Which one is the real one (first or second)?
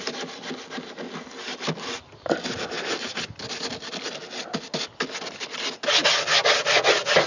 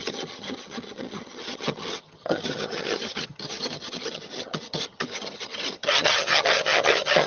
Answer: first